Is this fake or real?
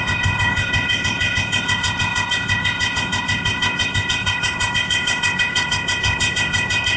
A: fake